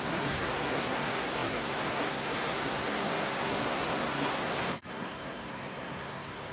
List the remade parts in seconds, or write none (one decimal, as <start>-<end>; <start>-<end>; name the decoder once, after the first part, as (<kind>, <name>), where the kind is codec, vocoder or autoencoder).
0.0-6.5 (codec, SNAC)